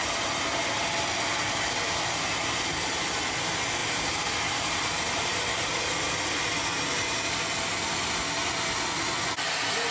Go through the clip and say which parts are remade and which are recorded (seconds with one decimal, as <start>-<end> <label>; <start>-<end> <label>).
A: 0.0-3.8 recorded; 3.8-5.8 remade; 5.8-9.9 recorded